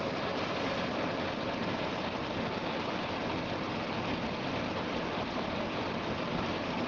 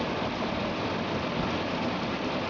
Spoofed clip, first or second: second